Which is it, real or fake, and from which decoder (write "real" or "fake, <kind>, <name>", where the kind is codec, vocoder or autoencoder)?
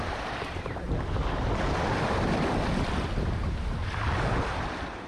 real